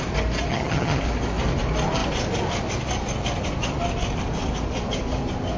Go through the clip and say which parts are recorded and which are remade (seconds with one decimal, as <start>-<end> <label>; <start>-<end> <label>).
0.0-0.5 recorded; 0.5-1.0 remade; 1.0-5.6 recorded